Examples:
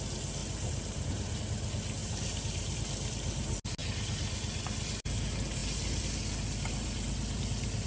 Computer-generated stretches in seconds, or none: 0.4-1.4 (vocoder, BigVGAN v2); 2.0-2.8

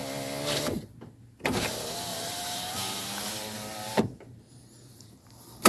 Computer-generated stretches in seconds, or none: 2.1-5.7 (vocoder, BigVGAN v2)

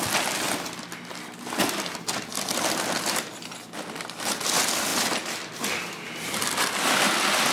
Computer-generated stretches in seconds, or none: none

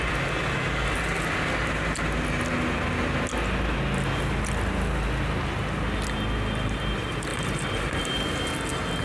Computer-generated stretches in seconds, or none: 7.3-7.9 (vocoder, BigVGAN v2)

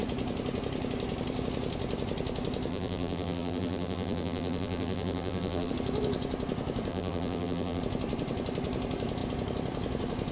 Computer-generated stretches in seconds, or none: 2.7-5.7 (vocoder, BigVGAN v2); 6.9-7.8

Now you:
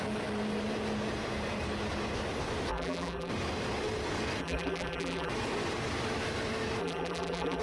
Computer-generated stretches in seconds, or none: 2.7-3.3 (vocoder, BigVGAN v2); 4.4-5.3; 6.8-7.6